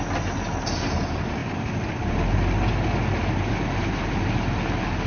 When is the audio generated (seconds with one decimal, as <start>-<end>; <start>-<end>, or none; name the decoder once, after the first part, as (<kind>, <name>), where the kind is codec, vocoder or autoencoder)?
none